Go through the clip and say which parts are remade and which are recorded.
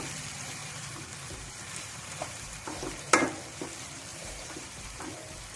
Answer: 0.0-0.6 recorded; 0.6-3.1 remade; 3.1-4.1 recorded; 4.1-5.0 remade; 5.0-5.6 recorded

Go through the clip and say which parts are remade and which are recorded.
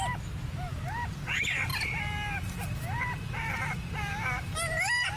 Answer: 0.0-1.7 remade; 1.7-3.2 recorded; 3.2-5.2 remade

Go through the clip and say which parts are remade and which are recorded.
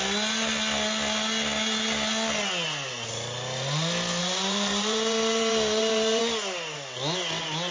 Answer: 0.0-4.2 recorded; 4.2-6.2 remade; 6.2-7.7 recorded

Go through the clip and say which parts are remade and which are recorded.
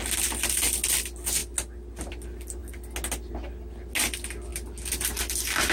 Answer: 0.0-5.7 recorded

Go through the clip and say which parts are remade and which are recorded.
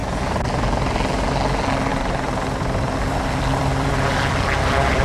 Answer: 0.0-1.9 recorded; 1.9-5.0 remade